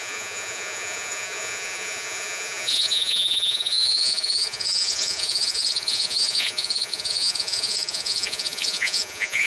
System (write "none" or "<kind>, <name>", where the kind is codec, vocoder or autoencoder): vocoder, Vocos